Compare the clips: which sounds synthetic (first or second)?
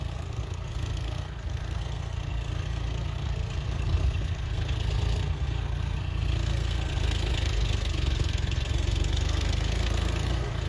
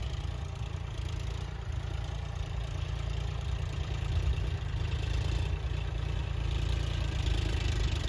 first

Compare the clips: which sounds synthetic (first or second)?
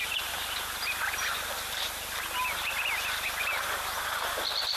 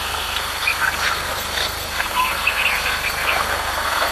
second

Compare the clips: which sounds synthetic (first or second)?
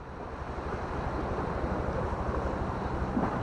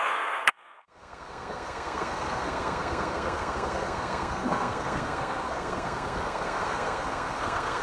second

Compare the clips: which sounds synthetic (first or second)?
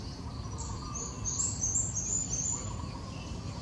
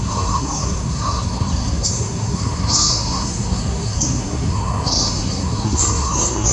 second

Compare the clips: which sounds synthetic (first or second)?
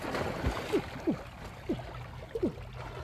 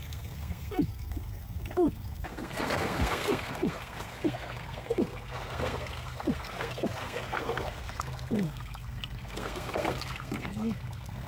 second